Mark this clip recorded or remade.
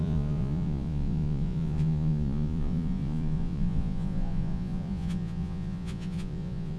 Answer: remade